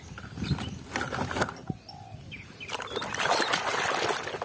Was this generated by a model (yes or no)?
no